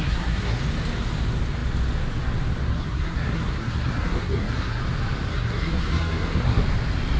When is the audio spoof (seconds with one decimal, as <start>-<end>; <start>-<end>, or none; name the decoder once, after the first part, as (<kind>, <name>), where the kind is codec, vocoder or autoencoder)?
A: 0.0-0.6 (codec, SNAC); 2.7-4.8; 5.3-6.6